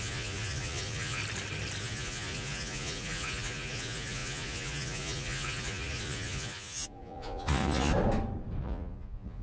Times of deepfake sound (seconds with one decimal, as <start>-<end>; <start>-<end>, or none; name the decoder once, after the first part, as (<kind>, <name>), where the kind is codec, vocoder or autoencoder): 0.0-1.2 (vocoder, Vocos); 1.8-7.9; 8.6-9.4